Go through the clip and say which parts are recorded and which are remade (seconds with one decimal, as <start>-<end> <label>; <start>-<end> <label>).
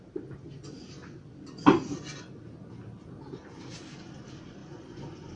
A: 0.0-4.6 recorded; 4.6-5.4 remade